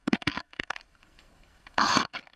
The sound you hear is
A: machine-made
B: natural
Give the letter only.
A